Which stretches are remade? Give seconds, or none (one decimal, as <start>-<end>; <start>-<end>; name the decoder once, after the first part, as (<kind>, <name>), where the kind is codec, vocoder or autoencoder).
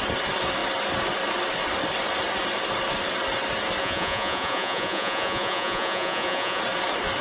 3.8-6.6 (vocoder, Vocos)